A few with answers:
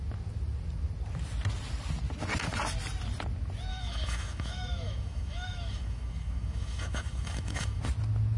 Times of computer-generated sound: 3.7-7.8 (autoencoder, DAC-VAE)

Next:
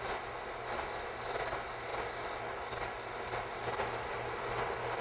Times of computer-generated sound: none

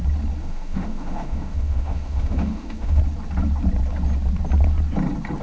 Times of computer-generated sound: 0.4-3.0 (autoencoder, DAC-VAE)

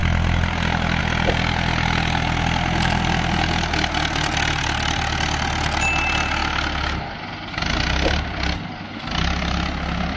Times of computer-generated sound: none